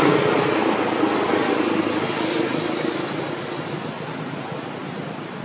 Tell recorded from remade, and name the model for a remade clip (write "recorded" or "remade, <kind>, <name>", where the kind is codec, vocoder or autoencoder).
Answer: recorded